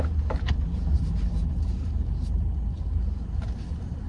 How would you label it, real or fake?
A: real